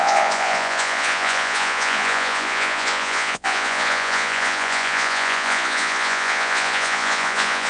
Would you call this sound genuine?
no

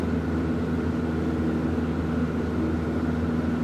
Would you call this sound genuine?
yes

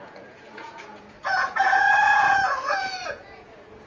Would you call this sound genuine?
no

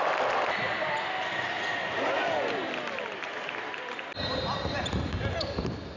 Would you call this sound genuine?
yes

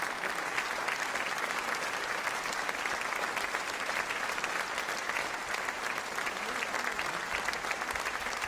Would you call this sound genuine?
yes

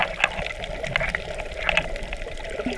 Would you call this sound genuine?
yes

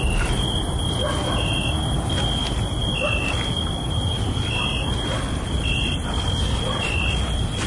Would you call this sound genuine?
yes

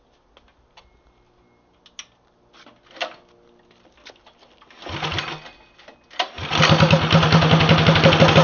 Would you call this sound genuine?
yes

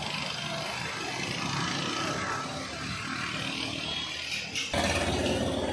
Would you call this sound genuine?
yes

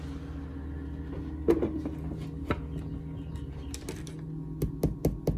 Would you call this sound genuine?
yes